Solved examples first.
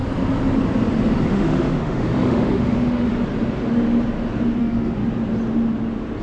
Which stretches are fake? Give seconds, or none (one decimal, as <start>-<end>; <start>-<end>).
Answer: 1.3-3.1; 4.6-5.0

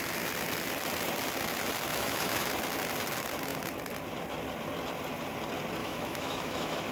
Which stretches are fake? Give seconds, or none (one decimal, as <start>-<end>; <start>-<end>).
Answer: 1.9-2.5; 5.8-6.9

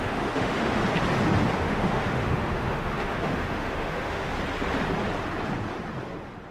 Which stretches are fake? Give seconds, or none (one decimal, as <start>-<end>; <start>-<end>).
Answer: 0.0-0.8; 1.6-4.3

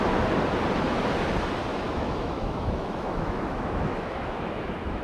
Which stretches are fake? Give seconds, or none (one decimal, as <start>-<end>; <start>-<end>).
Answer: 1.7-5.0